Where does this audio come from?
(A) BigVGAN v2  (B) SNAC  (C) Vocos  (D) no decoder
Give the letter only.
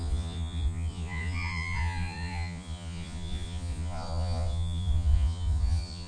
C